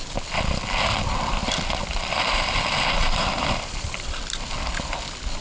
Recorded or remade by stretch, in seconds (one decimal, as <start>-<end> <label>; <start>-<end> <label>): 0.0-1.4 recorded; 1.4-4.5 remade; 4.5-5.4 recorded